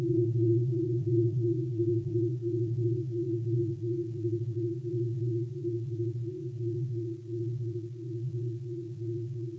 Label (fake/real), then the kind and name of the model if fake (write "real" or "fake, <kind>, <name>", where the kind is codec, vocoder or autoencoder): fake, vocoder, Vocos